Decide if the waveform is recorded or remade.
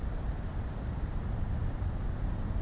recorded